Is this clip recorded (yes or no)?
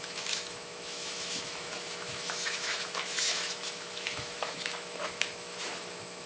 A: no